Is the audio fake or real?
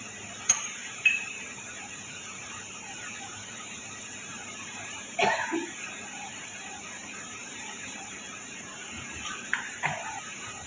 fake